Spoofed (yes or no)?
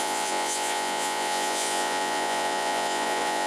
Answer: yes